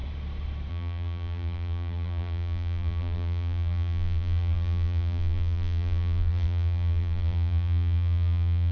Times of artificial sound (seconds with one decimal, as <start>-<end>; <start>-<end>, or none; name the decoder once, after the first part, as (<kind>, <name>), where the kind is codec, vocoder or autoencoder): 0.7-8.7 (vocoder, BigVGAN v2)